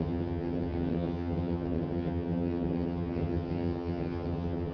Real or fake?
fake